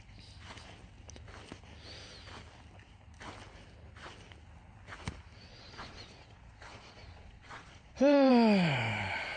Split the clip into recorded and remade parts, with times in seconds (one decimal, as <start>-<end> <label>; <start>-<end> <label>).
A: 0.0-5.5 recorded; 5.5-8.3 remade; 8.3-9.4 recorded